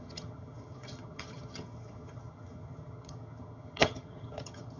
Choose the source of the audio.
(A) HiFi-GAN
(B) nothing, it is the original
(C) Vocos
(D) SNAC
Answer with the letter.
A